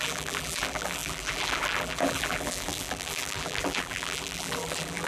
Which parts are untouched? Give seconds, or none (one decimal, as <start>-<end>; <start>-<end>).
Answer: none